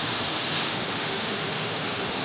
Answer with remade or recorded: remade